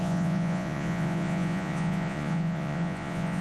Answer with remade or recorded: remade